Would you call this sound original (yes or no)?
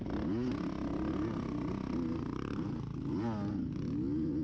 yes